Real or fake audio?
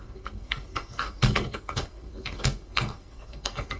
fake